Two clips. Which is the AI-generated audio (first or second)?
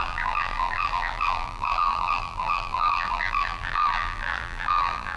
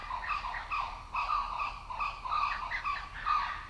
first